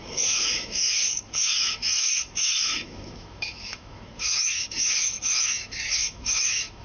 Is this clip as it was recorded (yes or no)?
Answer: no